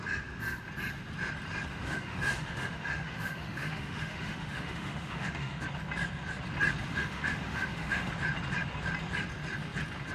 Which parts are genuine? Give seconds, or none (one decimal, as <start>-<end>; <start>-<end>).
0.0-1.7; 5.6-6.9; 8.1-10.1